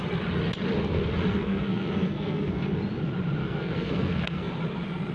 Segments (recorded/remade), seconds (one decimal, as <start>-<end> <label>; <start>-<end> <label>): 0.0-1.3 recorded; 1.3-2.8 remade; 2.8-3.4 recorded; 3.4-4.5 remade; 4.5-5.1 recorded